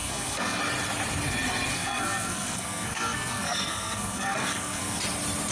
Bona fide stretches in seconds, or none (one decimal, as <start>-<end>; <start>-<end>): 0.6-1.7; 5.0-5.5